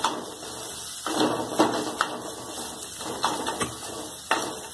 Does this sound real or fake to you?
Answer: real